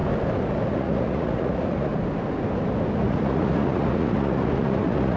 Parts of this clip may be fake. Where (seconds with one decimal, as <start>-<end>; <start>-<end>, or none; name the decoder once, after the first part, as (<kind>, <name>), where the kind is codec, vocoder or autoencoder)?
0.7-1.9 (vocoder, Vocos); 3.0-5.2